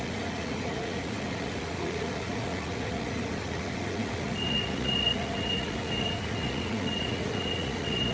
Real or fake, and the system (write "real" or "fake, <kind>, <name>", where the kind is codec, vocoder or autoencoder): fake, vocoder, Vocos